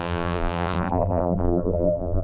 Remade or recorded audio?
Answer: remade